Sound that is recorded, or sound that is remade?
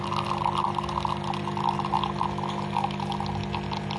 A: recorded